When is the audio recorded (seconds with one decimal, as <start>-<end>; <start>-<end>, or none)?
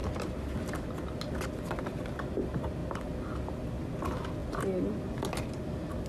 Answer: 0.0-6.1